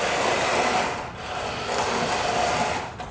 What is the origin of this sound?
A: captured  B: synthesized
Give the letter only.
A